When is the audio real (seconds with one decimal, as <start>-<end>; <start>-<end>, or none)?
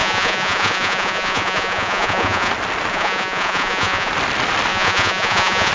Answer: 2.5-2.9; 4.1-4.7